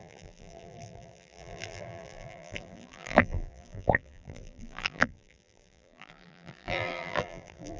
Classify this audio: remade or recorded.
remade